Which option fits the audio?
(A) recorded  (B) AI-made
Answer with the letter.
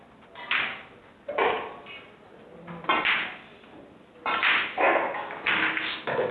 A